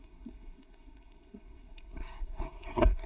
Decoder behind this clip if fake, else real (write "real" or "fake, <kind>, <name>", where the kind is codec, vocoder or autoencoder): fake, codec, SNAC